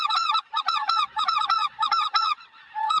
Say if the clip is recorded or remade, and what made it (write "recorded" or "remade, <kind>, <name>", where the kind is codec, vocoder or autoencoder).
remade, vocoder, Vocos